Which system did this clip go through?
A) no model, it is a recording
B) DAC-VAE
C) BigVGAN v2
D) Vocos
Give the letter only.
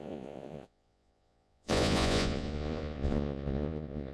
D